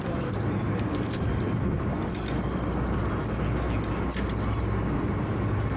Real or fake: real